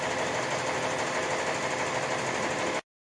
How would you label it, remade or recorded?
recorded